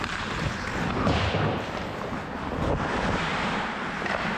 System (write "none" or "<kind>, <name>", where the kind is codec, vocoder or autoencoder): none